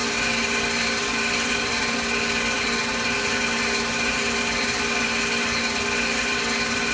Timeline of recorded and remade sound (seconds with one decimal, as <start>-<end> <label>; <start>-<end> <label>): 0.0-6.9 recorded